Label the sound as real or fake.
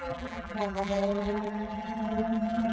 fake